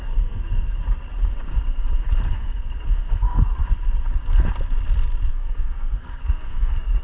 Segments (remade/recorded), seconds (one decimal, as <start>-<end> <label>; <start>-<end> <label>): 0.0-0.8 remade; 0.8-2.3 recorded; 2.3-3.5 remade; 3.5-5.3 recorded; 5.3-7.0 remade